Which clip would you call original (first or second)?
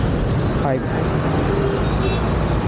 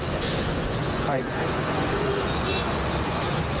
first